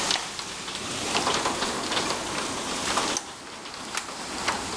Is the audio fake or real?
real